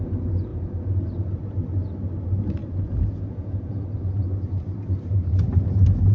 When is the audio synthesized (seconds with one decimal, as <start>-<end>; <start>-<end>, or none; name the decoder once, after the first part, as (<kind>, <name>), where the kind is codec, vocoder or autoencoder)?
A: 0.5-1.0 (vocoder, Vocos); 2.6-3.7

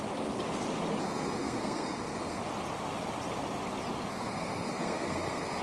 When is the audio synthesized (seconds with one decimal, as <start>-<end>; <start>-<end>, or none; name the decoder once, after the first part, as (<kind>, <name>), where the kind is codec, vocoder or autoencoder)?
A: 1.0-2.4 (codec, SNAC); 4.1-5.6

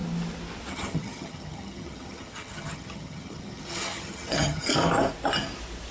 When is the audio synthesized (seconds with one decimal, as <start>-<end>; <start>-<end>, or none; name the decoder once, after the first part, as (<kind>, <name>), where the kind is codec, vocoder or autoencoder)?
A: 0.7-4.7 (vocoder, HiFi-GAN)